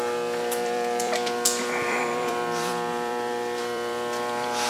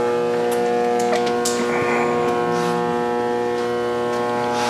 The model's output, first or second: first